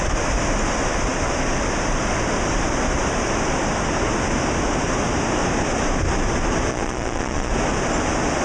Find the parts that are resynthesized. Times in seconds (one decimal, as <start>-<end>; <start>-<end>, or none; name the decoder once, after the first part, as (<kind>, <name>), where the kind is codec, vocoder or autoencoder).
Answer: 6.7-7.5 (vocoder, Vocos)